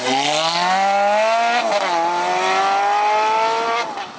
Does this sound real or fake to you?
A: real